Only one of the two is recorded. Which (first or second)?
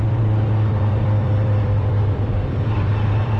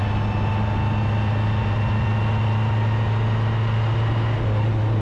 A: second